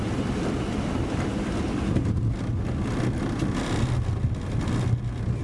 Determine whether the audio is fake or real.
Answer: real